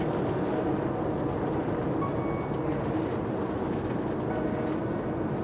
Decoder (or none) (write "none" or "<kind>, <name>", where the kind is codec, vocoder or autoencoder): none